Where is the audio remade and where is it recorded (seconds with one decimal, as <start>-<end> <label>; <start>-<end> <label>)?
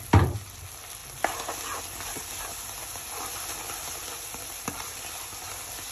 0.0-5.9 recorded